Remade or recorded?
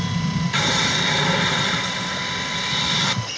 recorded